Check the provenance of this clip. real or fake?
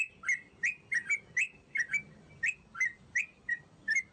real